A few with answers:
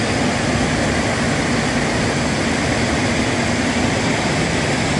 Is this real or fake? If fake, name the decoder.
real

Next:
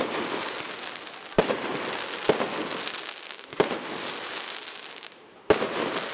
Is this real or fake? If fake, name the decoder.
real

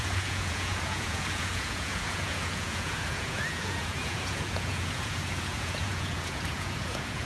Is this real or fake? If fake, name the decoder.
fake, vocoder, Vocos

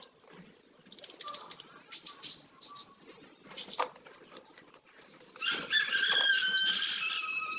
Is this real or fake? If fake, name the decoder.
real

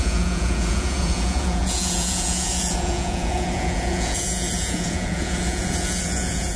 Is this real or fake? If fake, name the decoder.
fake, vocoder, Vocos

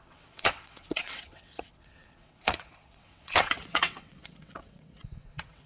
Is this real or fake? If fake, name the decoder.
fake, vocoder, WaveNeXt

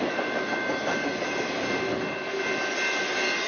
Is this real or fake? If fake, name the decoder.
real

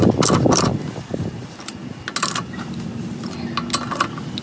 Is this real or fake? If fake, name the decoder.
real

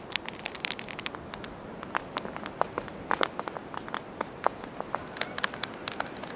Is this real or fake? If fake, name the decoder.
real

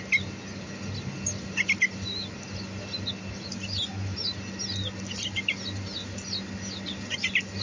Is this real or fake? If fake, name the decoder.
real